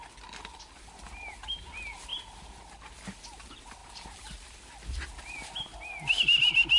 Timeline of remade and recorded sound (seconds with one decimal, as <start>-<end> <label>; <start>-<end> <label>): 0.0-6.8 recorded